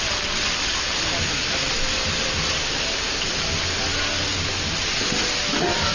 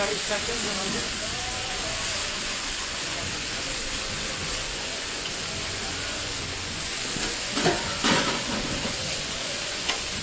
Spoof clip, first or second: second